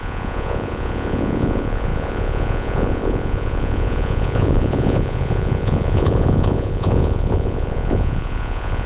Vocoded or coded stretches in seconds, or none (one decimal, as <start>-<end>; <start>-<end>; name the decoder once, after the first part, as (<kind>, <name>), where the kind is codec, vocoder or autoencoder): 0.0-8.9 (vocoder, Vocos)